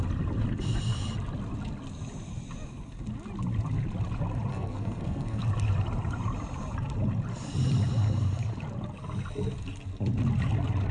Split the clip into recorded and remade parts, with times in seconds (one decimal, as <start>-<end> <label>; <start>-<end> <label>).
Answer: 0.0-4.5 recorded; 4.5-5.4 remade; 5.4-10.9 recorded

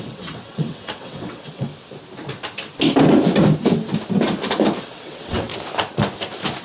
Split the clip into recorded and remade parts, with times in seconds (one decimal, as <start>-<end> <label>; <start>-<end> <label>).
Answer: 0.0-1.7 remade; 1.7-4.8 recorded; 4.8-5.5 remade; 5.5-6.6 recorded